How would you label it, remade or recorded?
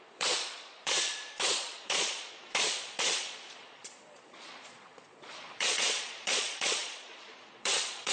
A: remade